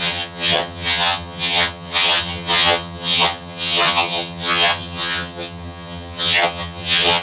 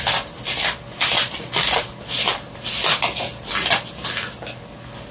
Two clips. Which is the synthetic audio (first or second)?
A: first